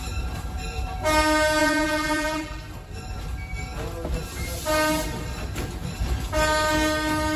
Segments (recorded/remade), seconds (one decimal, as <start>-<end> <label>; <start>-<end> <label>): 0.0-1.6 recorded; 1.6-2.6 remade; 2.6-7.4 recorded